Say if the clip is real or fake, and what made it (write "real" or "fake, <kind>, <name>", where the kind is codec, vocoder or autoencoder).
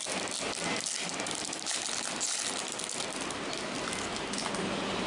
real